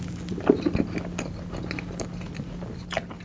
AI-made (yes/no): no